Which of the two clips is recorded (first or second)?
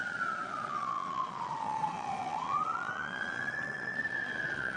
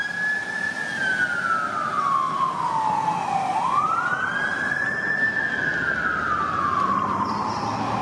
second